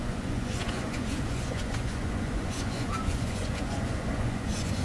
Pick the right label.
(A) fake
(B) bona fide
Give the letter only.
A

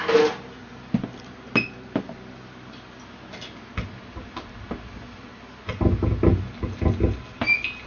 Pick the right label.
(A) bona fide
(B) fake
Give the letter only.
A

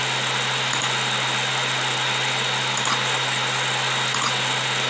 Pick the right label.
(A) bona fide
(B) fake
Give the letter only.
A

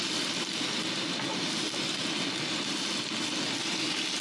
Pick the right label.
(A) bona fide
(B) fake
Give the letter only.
A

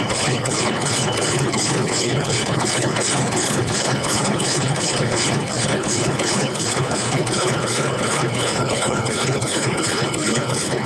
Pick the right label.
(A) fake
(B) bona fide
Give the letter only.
A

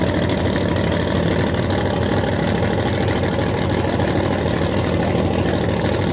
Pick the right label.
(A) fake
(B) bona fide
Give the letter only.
B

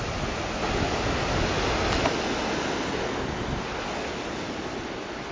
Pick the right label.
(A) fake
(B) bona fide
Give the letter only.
B